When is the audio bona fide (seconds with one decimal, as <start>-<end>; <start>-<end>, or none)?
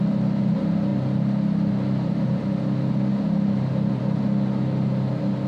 0.0-5.5